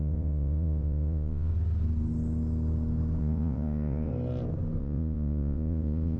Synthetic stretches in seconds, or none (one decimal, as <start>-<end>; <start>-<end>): 0.0-1.5; 3.2-4.1; 4.8-6.2